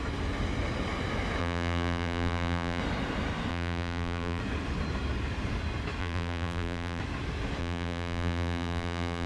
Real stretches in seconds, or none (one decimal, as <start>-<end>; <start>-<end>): 0.0-1.4; 2.8-3.5; 4.4-6.0; 7.0-7.6